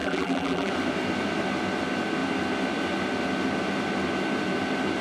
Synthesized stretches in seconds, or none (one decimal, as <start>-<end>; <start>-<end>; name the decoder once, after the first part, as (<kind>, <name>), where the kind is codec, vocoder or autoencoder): 0.0-0.7 (vocoder, BigVGAN v2)